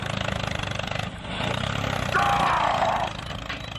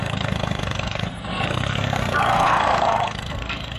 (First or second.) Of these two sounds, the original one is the first